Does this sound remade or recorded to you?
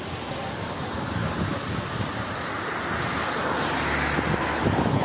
recorded